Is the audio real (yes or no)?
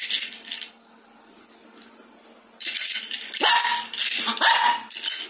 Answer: yes